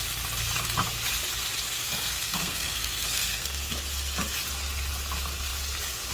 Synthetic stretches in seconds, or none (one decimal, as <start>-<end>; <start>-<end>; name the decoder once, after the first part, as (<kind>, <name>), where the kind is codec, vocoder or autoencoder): 1.7-3.7 (codec, SNAC)